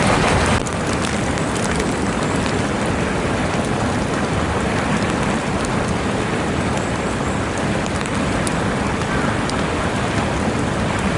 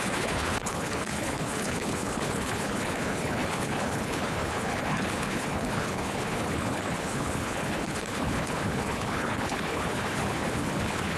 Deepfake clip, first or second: second